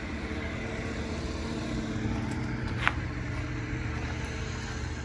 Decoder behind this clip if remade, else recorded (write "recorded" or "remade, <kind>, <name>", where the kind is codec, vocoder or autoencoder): remade, vocoder, BigVGAN v2